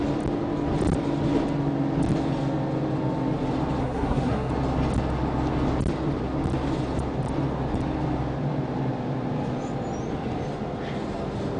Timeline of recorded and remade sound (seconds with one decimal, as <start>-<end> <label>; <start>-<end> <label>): 0.0-3.8 recorded; 3.8-4.5 remade; 4.5-11.6 recorded